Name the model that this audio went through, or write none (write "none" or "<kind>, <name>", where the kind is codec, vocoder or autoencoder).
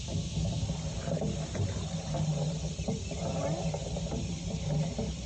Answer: none